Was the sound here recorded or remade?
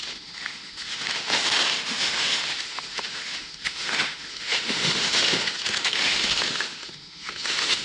remade